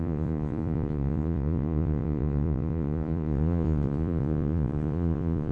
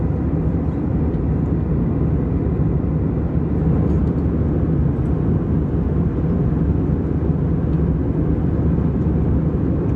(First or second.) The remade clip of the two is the first